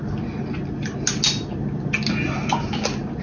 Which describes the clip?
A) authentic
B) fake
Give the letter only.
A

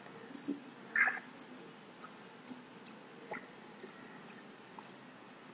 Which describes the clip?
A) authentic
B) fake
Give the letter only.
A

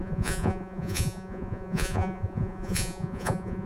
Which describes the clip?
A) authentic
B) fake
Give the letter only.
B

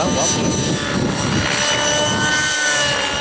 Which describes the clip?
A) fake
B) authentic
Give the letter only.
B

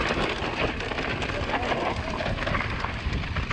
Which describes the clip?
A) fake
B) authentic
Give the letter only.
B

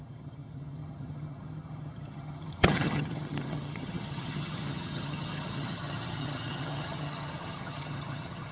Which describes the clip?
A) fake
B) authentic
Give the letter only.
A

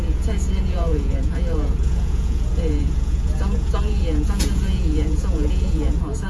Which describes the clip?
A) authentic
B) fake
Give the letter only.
B